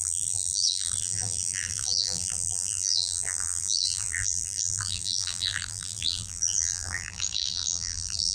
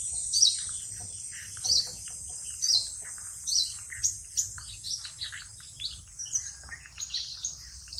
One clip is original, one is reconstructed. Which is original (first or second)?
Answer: second